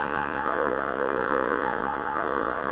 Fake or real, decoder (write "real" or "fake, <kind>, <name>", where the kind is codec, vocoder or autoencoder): fake, vocoder, Vocos